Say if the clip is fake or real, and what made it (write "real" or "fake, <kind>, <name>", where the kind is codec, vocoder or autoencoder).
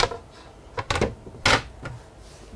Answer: real